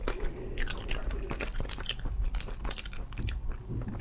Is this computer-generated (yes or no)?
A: no